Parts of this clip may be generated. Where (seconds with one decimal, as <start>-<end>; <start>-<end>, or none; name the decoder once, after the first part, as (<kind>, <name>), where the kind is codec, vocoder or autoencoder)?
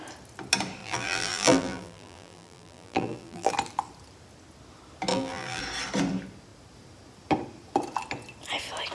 0.8-3.5 (vocoder, BigVGAN v2); 5.1-5.6